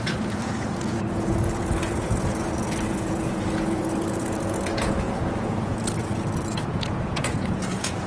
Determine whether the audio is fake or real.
fake